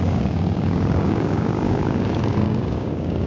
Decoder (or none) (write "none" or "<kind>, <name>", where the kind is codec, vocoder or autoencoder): codec, DAC